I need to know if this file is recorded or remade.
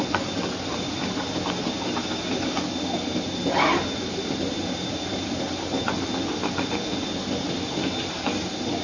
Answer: recorded